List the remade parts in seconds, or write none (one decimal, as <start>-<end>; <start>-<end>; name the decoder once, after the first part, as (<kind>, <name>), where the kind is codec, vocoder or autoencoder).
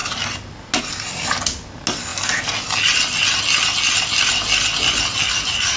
none